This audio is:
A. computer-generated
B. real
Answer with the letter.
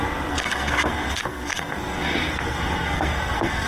A